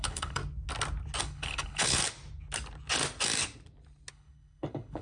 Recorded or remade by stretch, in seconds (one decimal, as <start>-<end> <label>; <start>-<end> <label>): 0.0-0.4 remade; 0.4-1.2 recorded; 1.2-2.0 remade; 2.0-4.1 recorded; 4.1-5.0 remade